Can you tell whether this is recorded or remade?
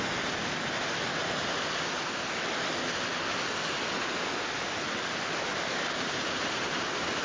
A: recorded